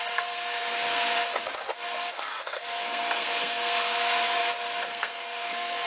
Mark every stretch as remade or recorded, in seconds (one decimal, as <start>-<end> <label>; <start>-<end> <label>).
0.0-1.2 remade; 1.2-2.1 recorded; 2.1-4.4 remade; 4.4-4.9 recorded; 4.9-5.9 remade